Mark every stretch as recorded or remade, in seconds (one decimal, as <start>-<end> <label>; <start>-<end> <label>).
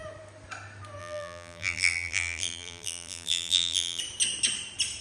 0.0-1.0 recorded; 1.0-4.0 remade; 4.0-5.0 recorded